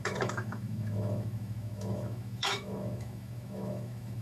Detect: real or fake fake